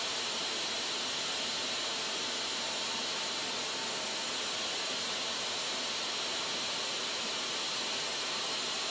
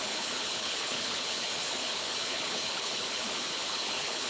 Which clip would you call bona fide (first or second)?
first